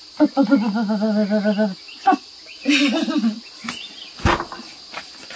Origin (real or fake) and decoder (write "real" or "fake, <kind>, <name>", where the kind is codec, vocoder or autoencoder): real